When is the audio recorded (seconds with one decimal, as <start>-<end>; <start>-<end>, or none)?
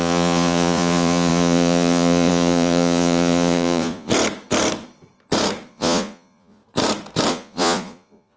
4.1-5.7; 6.6-7.3